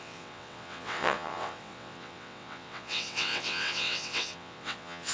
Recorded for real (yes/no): no